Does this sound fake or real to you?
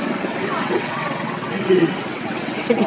fake